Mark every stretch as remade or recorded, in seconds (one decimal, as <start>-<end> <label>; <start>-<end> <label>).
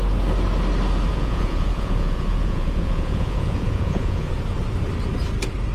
0.0-1.1 recorded; 1.1-4.3 remade; 4.3-5.7 recorded